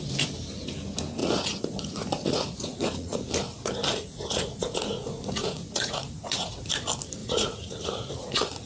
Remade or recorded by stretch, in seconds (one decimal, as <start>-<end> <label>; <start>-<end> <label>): 0.0-1.2 recorded; 1.2-3.3 remade; 3.3-3.9 recorded; 3.9-6.5 remade; 6.5-7.2 recorded; 7.2-8.7 remade